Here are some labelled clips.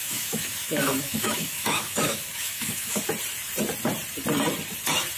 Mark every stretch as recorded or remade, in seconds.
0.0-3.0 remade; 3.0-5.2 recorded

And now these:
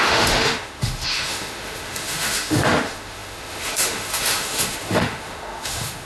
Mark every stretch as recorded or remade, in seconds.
0.0-6.1 remade

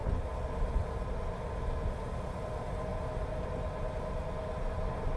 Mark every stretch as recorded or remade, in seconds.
0.0-5.2 recorded

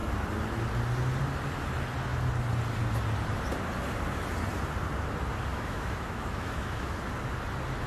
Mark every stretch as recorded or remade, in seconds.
0.0-5.5 recorded; 5.5-7.0 remade; 7.0-7.9 recorded

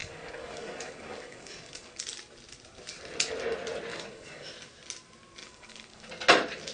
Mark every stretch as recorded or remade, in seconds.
0.0-2.0 remade; 2.0-3.9 recorded; 3.9-4.5 remade; 4.5-5.4 recorded; 5.4-6.1 remade; 6.1-6.7 recorded